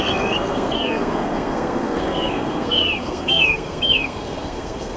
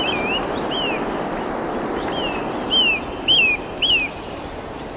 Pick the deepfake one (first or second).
first